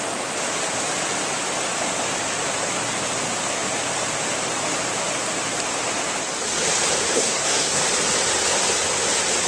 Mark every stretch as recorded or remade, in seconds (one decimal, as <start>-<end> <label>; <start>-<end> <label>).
0.0-7.1 recorded; 7.1-7.8 remade; 7.8-9.5 recorded